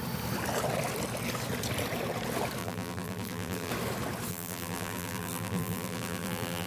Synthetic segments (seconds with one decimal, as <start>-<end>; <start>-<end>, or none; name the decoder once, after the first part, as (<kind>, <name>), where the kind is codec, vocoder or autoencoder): 2.6-3.7 (vocoder, BigVGAN v2); 4.3-6.7